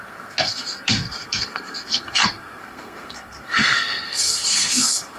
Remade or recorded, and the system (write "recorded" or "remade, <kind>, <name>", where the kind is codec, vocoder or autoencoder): remade, codec, SNAC